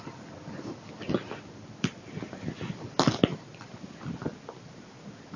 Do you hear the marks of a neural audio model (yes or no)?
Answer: no